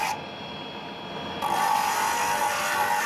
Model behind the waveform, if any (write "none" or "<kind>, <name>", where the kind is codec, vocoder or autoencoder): none